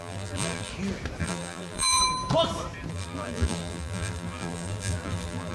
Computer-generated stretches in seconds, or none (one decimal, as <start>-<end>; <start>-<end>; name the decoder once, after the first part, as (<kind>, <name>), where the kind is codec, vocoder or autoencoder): 0.0-0.7 (vocoder, BigVGAN v2); 1.2-2.0; 2.9-5.5